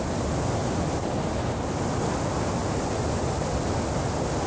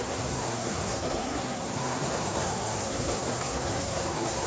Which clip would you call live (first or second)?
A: first